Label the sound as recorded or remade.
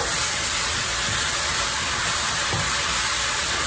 remade